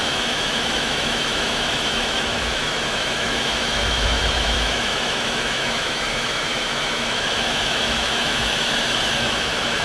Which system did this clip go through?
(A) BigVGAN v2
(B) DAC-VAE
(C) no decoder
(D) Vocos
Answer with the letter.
B